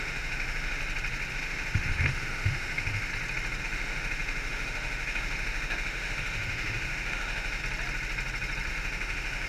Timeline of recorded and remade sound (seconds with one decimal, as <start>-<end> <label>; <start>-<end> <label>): 0.0-0.8 remade; 0.8-1.3 recorded; 1.3-3.1 remade; 3.1-3.6 recorded; 3.6-7.6 remade; 7.6-8.7 recorded; 8.7-9.5 remade